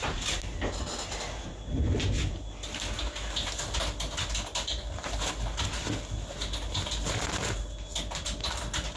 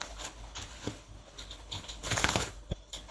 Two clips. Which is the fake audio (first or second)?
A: second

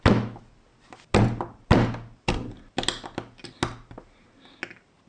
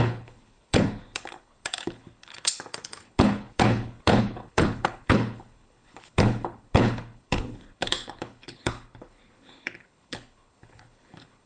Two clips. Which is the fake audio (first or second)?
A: second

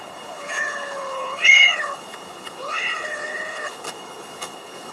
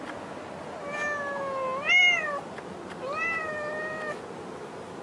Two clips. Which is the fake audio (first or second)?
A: first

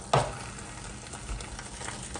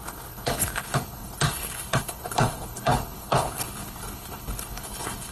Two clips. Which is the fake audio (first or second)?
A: second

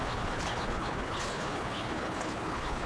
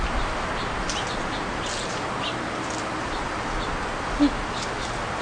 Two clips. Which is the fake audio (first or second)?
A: first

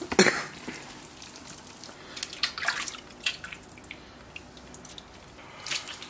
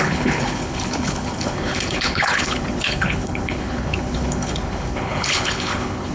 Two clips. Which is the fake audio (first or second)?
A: second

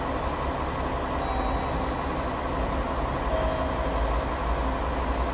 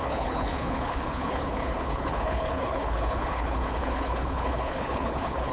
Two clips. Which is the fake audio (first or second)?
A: second